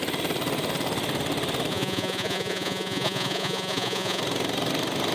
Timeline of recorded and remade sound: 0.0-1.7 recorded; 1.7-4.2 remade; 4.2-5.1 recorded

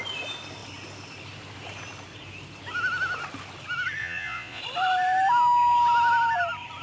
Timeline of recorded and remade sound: 0.0-4.0 recorded; 4.0-4.6 remade; 4.6-6.8 recorded

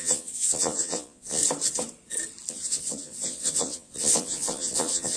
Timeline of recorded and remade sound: 0.0-1.4 remade; 1.4-2.5 recorded; 2.5-5.2 remade